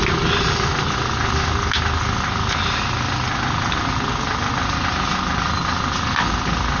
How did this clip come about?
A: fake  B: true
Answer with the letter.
B